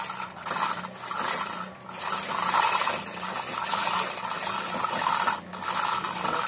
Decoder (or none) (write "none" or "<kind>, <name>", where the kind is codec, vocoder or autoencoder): none